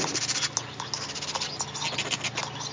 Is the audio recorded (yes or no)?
yes